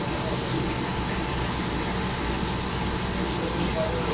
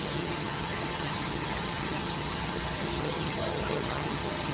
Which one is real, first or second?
first